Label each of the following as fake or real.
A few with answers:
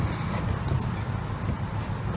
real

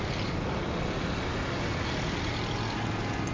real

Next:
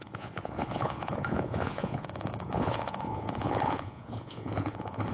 fake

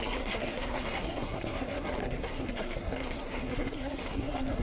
fake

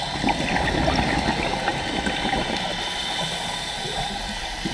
real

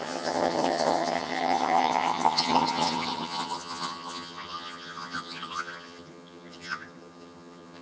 fake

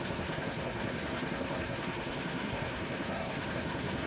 fake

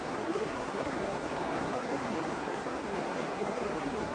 fake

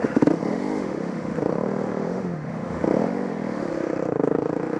fake